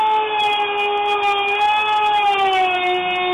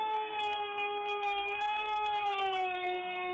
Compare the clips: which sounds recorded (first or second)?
first